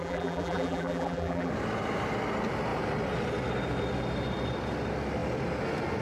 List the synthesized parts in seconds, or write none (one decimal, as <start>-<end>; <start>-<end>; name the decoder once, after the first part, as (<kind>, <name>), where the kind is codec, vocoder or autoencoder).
0.0-1.5 (vocoder, BigVGAN v2)